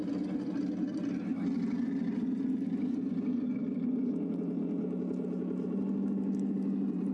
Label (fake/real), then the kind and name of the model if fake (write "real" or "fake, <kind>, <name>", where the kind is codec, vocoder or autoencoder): real